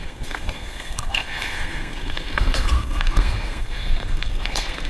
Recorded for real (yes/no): no